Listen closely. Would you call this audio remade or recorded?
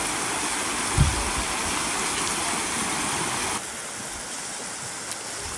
recorded